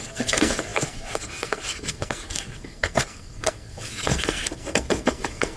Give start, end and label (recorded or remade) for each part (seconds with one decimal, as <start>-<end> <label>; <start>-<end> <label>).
0.0-5.6 remade